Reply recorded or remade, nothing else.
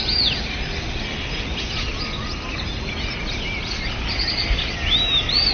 recorded